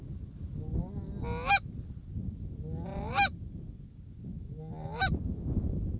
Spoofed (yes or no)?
no